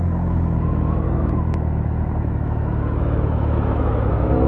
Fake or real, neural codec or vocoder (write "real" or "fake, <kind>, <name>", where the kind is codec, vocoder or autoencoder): fake, autoencoder, DAC-VAE